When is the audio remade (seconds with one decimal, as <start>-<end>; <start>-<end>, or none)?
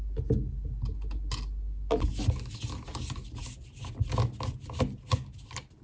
none